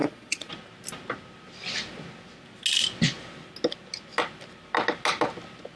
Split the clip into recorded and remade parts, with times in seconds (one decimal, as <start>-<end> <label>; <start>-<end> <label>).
0.0-0.5 remade; 0.5-5.8 recorded